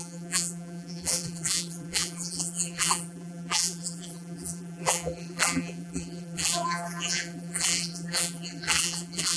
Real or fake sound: fake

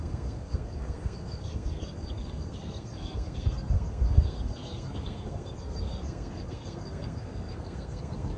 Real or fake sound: fake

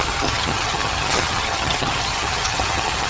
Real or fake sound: fake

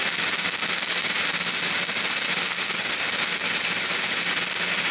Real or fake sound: real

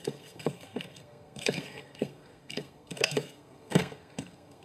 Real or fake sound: fake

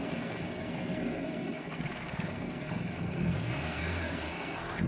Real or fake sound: fake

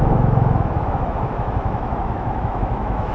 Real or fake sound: fake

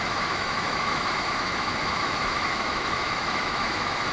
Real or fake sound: fake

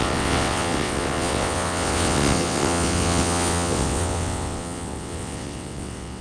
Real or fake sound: fake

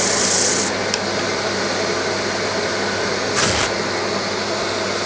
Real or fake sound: real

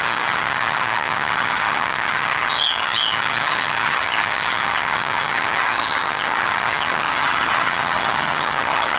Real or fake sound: fake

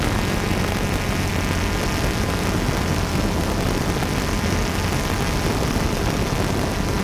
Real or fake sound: real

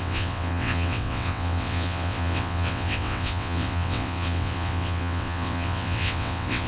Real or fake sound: fake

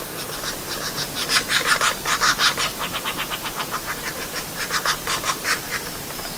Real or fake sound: fake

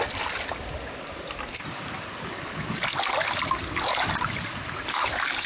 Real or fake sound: real